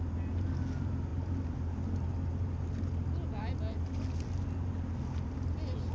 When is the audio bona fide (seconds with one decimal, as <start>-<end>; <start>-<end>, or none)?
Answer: 0.0-5.9